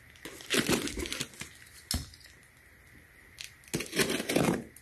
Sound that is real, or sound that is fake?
real